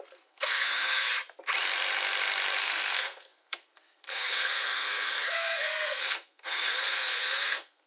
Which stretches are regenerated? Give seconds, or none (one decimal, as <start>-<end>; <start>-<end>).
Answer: 0.0-1.1; 2.6-7.9